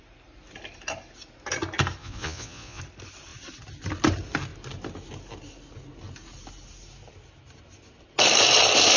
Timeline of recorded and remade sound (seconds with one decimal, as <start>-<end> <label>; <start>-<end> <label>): 0.0-2.0 recorded; 2.0-2.8 remade; 2.8-9.0 recorded